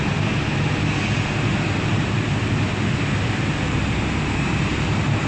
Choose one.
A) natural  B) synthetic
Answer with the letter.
A